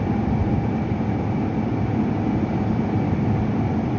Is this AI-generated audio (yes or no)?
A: no